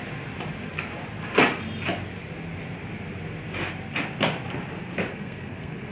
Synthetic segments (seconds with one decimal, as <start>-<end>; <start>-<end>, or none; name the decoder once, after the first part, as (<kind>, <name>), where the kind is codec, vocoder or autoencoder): 5.1-5.9 (codec, SNAC)